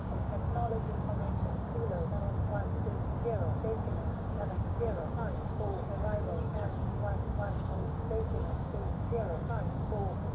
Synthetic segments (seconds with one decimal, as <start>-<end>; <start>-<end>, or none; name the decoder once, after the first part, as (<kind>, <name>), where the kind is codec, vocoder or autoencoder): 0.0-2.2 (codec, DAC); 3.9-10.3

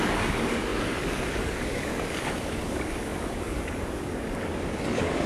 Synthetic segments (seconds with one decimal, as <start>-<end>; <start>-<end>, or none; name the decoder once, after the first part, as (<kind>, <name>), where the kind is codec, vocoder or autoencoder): 0.0-5.3 (codec, DAC)

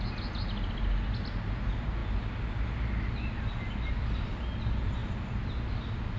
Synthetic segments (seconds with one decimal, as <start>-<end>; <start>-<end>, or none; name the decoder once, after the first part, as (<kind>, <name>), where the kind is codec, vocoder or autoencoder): none

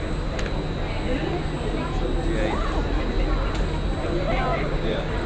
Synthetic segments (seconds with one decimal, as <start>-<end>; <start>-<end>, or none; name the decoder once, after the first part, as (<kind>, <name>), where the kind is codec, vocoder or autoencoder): 4.5-5.3 (codec, DAC)